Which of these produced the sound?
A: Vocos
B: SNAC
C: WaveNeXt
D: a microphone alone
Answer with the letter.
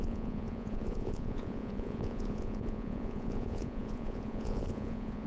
A